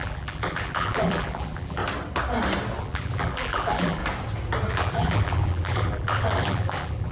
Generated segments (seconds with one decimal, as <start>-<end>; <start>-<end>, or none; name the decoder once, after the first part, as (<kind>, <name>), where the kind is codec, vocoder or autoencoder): 0.0-1.8 (vocoder, BigVGAN v2); 2.8-4.0; 4.7-7.1